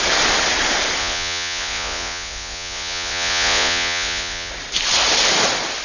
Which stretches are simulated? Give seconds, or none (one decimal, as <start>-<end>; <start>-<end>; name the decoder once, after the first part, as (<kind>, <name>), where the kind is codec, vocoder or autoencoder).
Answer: 1.0-4.5 (vocoder, Vocos)